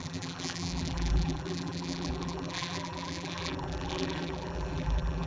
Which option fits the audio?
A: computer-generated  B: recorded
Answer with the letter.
A